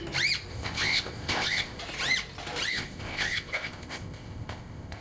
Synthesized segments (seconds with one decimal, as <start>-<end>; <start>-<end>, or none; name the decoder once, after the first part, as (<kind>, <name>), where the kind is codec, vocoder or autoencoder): 0.5-1.8 (codec, ZipCodec); 2.7-5.0